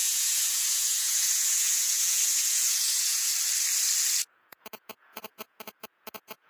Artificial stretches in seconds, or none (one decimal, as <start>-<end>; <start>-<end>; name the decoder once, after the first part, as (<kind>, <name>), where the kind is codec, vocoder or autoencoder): 0.0-3.3 (vocoder, Vocos); 4.3-6.5